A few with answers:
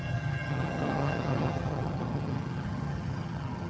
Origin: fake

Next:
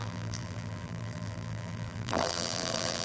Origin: fake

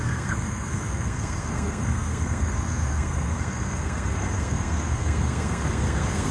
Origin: fake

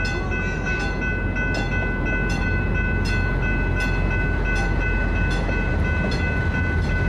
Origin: real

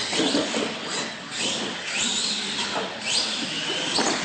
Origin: real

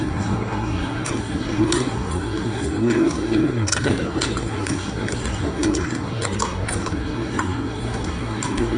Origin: fake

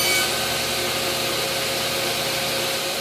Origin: real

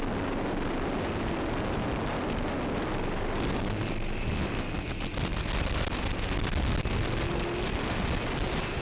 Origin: real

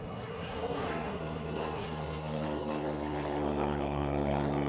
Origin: fake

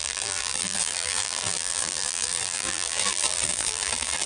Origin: fake